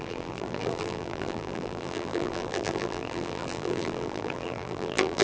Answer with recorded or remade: remade